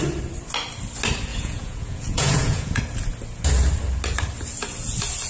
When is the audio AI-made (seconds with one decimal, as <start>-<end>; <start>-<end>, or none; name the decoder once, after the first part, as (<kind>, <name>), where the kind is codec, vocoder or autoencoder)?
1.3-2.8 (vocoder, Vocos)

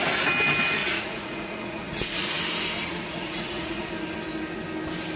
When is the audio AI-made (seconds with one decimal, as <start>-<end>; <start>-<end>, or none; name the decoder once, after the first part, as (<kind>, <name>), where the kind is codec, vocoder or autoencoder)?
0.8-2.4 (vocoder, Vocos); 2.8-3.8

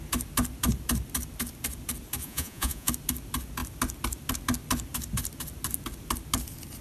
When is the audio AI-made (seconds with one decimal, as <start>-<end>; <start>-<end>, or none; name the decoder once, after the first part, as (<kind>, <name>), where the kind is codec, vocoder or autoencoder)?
2.2-2.9 (vocoder, Vocos)